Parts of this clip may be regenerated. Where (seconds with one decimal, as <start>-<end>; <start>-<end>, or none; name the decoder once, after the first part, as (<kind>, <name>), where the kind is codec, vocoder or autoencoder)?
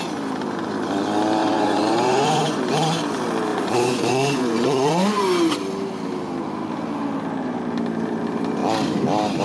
1.4-2.6 (vocoder, Vocos); 3.5-5.2